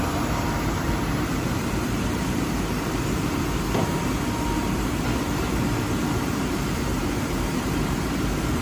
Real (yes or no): no